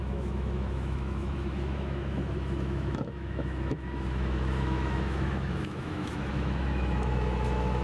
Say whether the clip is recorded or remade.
remade